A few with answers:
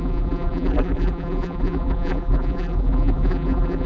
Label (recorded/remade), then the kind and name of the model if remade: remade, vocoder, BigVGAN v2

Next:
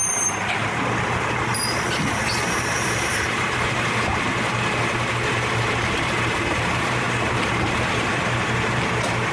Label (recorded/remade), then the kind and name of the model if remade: remade, vocoder, BigVGAN v2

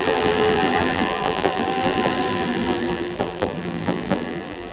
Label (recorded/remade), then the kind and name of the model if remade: remade, vocoder, BigVGAN v2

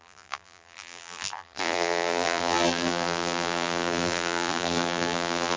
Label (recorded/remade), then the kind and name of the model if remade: remade, vocoder, BigVGAN v2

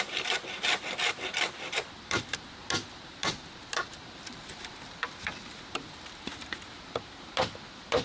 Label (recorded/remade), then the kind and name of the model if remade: remade, vocoder, BigVGAN v2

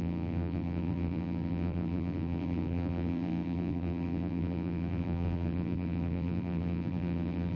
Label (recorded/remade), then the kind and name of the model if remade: remade, vocoder, BigVGAN v2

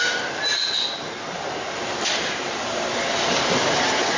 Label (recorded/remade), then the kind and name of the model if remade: remade, vocoder, BigVGAN v2